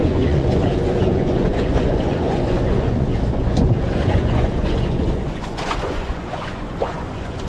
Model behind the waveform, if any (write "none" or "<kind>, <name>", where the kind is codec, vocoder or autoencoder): vocoder, Vocos